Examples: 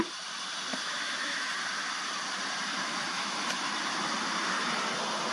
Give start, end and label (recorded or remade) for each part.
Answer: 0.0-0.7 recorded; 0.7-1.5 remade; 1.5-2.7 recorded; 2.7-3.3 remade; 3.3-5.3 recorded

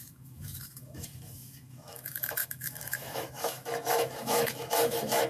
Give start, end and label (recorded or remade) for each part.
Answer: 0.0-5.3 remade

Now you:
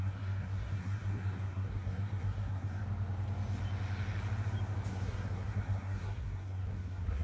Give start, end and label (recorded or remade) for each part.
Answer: 0.0-2.8 remade; 2.8-4.9 recorded; 4.9-7.2 remade

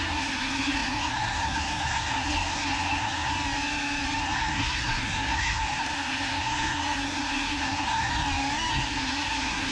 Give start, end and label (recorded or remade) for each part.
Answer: 0.0-3.3 remade; 3.3-4.2 recorded; 4.2-8.1 remade; 8.1-8.7 recorded; 8.7-9.7 remade

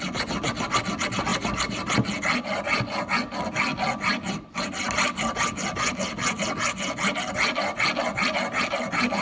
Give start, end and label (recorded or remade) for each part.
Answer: 0.0-9.2 recorded

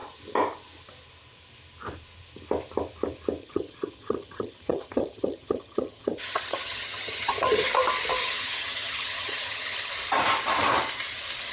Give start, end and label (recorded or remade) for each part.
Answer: 0.0-3.4 recorded; 3.4-7.7 remade; 7.7-8.2 recorded; 8.2-9.9 remade; 9.9-11.5 recorded

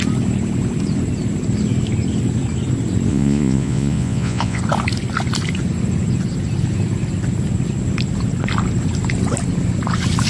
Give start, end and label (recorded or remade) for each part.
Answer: 0.0-3.1 recorded; 3.1-4.6 remade; 4.6-10.3 recorded

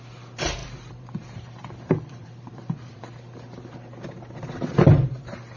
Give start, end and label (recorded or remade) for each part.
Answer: 0.0-0.6 recorded; 0.6-3.0 remade; 3.0-5.6 recorded